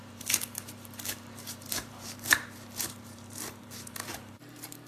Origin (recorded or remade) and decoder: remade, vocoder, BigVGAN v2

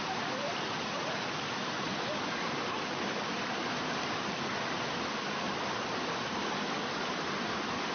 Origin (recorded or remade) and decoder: recorded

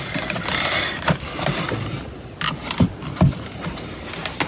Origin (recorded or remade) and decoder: recorded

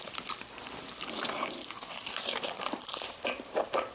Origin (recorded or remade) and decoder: remade, vocoder, BigVGAN v2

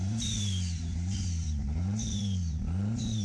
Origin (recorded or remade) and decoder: remade, vocoder, BigVGAN v2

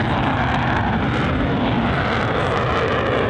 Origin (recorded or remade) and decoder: remade, vocoder, BigVGAN v2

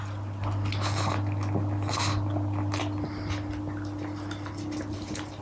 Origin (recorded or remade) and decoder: recorded